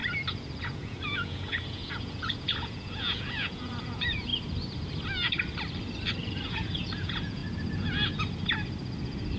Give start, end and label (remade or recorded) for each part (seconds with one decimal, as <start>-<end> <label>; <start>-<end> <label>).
0.0-0.6 recorded; 0.6-4.3 remade; 4.3-6.2 recorded; 6.2-7.4 remade; 7.4-9.4 recorded